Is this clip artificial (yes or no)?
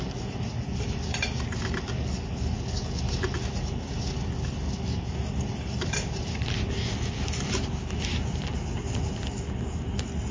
no